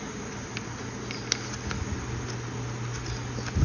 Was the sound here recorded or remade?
recorded